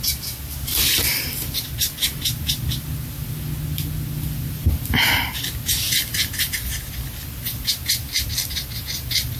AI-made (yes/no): no